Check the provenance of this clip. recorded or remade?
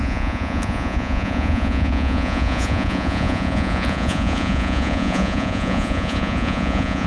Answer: remade